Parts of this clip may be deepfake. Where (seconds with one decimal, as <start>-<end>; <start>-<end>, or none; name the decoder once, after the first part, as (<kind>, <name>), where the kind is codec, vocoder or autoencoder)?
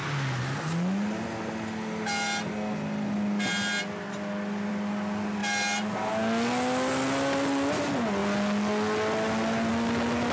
none